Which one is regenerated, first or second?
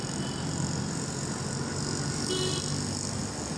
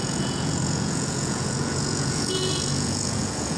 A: second